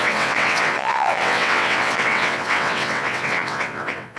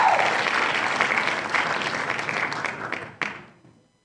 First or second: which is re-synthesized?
first